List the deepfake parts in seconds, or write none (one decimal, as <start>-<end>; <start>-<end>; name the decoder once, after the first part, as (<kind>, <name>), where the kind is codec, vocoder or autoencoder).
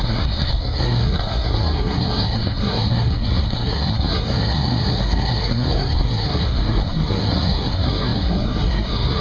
0.0-9.2 (codec, SNAC)